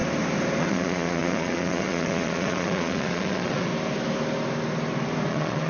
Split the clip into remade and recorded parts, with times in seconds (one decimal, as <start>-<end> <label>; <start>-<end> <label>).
0.0-0.6 recorded; 0.6-3.7 remade; 3.7-5.3 recorded; 5.3-5.7 remade